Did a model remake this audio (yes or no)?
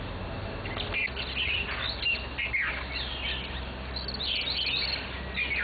no